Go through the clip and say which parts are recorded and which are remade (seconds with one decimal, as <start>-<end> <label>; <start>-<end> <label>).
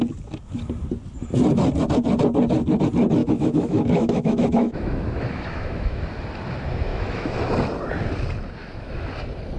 0.0-3.2 recorded; 3.2-6.0 remade; 6.0-6.9 recorded; 6.9-7.5 remade; 7.5-8.6 recorded; 8.6-9.1 remade; 9.1-9.6 recorded